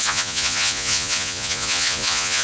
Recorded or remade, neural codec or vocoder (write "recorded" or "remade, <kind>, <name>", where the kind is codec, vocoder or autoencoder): remade, vocoder, Vocos